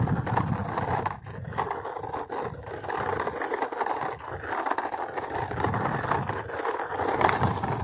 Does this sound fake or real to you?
real